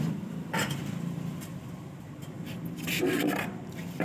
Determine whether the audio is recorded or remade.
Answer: remade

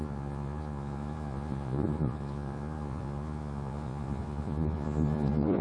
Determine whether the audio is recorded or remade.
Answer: remade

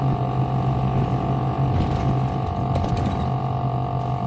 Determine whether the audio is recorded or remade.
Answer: recorded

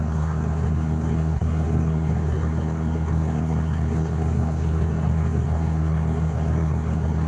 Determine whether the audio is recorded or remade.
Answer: remade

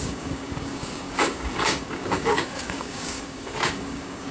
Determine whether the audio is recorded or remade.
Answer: remade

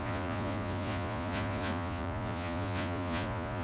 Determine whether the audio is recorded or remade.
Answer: remade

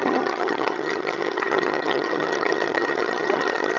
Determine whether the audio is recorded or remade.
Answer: remade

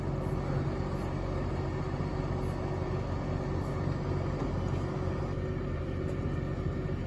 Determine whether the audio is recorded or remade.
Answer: recorded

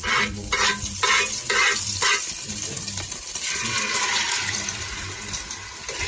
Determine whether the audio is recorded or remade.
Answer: recorded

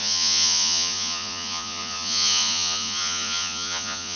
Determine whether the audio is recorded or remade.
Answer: remade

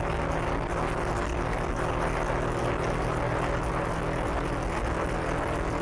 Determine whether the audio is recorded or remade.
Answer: recorded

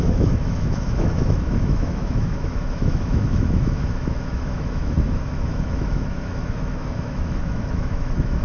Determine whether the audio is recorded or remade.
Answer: remade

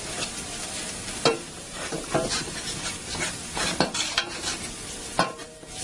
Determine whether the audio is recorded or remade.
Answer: remade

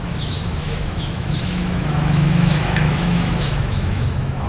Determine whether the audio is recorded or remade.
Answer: remade